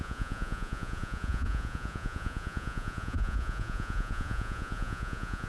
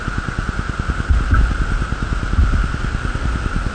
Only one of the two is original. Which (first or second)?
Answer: second